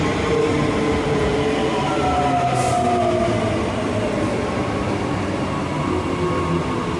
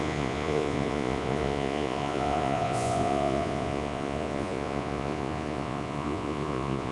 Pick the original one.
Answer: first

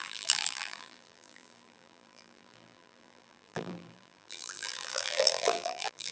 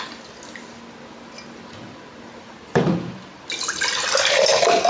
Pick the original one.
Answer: second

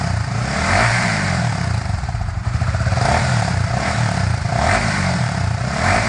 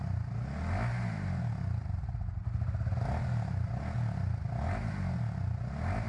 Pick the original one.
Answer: second